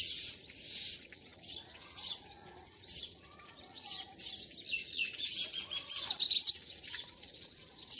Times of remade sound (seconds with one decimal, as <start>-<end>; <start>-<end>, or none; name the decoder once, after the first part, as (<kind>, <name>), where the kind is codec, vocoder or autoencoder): 0.0-4.1 (vocoder, Vocos); 4.7-8.0

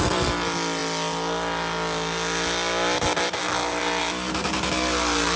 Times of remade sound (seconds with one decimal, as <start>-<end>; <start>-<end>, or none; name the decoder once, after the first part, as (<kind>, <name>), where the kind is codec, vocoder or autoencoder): none

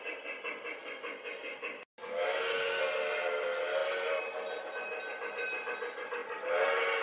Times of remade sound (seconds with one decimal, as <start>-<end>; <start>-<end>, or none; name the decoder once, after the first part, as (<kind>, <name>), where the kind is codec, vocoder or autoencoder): none

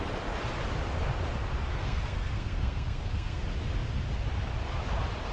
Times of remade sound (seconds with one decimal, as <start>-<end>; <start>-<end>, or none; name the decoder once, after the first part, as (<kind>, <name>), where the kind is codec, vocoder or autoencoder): 1.7-3.4 (codec, SNAC)

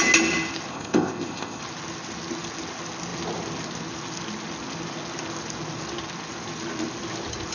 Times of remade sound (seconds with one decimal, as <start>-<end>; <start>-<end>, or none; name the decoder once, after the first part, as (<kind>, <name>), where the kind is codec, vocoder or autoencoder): 0.7-1.6 (codec, ZipCodec)